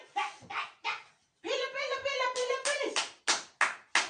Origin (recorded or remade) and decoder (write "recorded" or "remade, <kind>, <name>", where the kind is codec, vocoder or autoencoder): recorded